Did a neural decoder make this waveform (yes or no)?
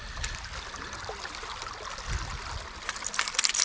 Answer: no